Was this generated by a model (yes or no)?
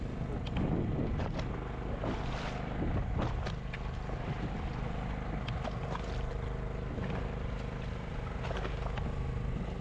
no